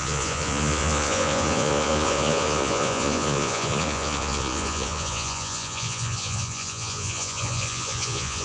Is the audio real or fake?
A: fake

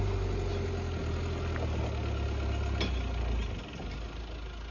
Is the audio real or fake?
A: real